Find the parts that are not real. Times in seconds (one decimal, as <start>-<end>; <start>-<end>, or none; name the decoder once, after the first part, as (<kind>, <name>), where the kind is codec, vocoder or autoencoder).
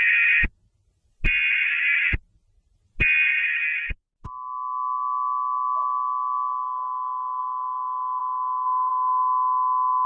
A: none